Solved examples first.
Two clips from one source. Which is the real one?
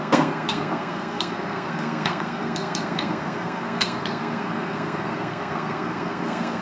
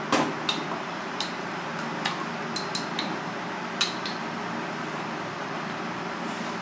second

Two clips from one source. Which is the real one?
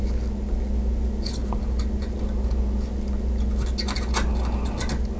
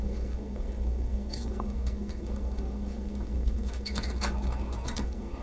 first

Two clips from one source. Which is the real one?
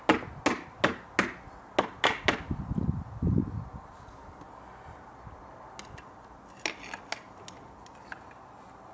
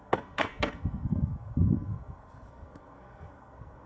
first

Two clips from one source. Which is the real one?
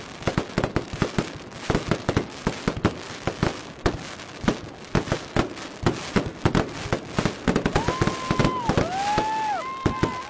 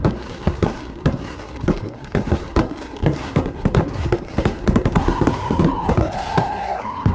first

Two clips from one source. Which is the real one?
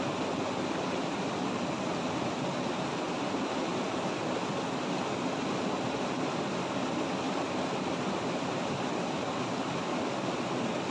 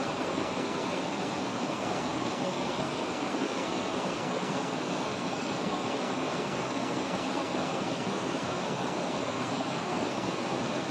first